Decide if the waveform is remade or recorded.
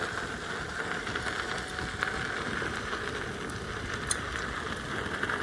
recorded